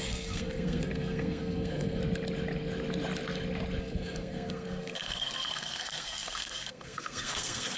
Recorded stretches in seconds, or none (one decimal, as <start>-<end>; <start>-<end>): 2.0-3.8